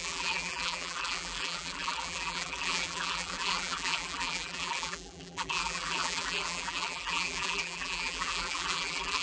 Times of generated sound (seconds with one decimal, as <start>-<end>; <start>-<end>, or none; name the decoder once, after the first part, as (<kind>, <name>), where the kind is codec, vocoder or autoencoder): 0.0-9.2 (vocoder, BigVGAN v2)